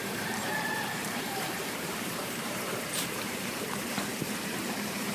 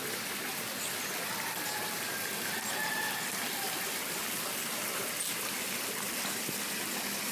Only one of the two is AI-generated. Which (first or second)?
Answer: first